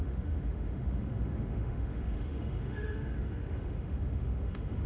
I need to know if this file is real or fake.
fake